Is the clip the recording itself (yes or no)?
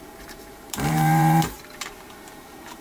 no